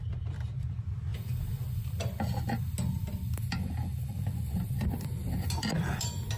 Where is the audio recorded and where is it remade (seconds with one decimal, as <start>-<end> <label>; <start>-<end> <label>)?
0.0-6.4 recorded